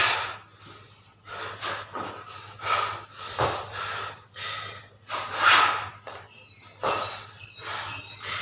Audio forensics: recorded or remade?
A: recorded